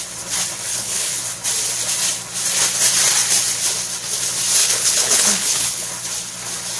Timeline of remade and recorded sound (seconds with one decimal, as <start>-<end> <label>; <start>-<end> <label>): 0.0-0.7 recorded; 0.7-1.2 remade; 1.2-4.6 recorded; 4.6-5.9 remade; 5.9-6.8 recorded